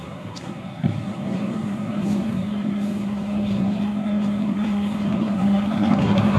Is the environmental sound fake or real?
fake